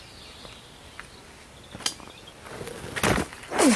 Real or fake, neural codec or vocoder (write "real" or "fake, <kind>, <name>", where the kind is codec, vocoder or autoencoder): real